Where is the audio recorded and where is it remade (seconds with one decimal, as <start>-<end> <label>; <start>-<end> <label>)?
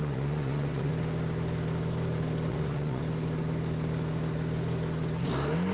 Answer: 0.0-0.9 remade; 0.9-2.5 recorded; 2.5-3.0 remade; 3.0-5.7 recorded